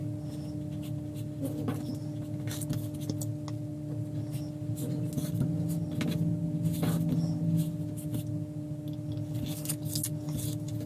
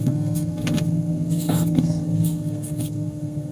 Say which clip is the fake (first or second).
second